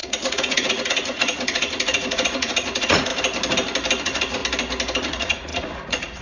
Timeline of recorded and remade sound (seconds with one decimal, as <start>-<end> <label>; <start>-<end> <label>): 0.0-3.1 remade; 3.1-4.0 recorded; 4.0-4.4 remade; 4.4-5.0 recorded; 5.0-6.2 remade